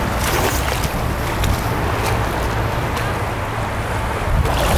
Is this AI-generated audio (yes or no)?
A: no